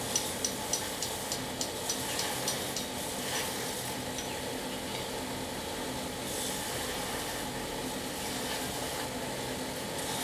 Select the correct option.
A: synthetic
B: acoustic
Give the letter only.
B